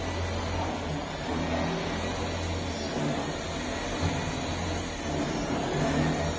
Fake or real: real